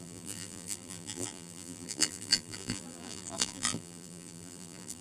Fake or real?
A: fake